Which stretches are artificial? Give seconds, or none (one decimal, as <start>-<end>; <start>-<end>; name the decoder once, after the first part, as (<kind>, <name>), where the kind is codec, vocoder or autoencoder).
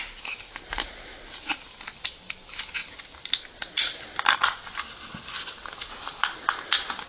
none